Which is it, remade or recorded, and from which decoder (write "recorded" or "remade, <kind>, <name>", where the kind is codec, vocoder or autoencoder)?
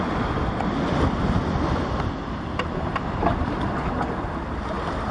recorded